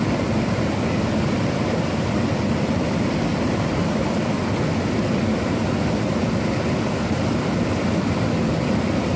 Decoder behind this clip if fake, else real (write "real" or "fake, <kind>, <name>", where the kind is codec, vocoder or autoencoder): real